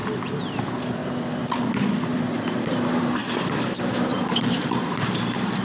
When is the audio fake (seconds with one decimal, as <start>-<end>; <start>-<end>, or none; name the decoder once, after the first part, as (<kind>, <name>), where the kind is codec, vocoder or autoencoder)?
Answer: 0.0-3.2 (vocoder, BigVGAN v2); 4.1-5.6